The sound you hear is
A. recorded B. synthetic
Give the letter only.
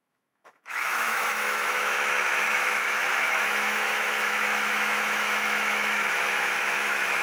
B